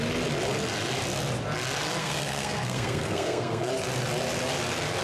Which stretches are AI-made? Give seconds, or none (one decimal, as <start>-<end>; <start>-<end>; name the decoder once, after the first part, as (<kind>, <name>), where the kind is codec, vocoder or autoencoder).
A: 2.0-3.7 (codec, SNAC)